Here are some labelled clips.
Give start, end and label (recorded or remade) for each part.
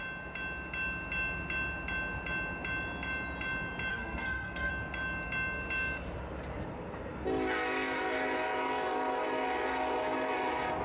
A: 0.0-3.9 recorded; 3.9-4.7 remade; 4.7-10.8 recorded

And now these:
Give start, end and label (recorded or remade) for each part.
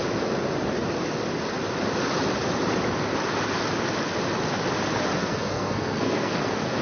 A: 0.0-5.2 recorded; 5.2-6.8 remade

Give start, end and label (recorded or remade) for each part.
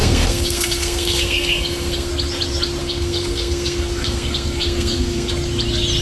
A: 0.0-2.1 remade; 2.1-2.8 recorded; 2.8-5.3 remade; 5.3-6.0 recorded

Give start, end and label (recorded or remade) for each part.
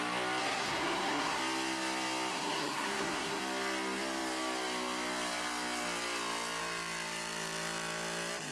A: 0.0-0.4 recorded; 0.4-1.4 remade; 1.4-2.3 recorded; 2.3-3.4 remade; 3.4-8.5 recorded